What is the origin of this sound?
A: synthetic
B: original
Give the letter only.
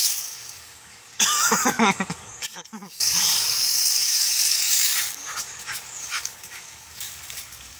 A